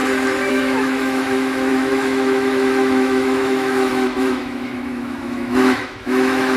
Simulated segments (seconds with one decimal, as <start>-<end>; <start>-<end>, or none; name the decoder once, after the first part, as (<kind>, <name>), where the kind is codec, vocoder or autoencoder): 0.5-6.6 (autoencoder, DAC-VAE)